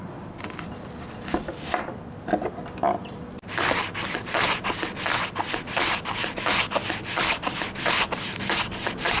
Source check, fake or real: real